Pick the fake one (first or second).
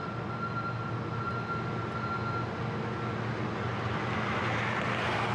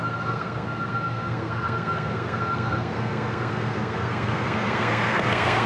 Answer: second